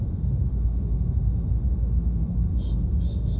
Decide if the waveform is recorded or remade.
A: remade